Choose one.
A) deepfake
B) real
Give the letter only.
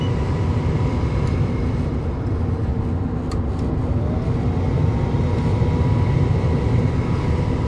B